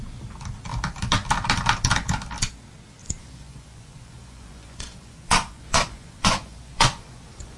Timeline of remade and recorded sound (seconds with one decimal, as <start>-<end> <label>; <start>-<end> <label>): 0.0-3.0 recorded; 3.0-7.6 remade